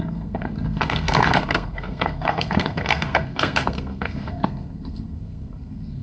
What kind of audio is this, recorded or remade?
remade